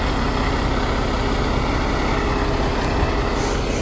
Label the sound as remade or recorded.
recorded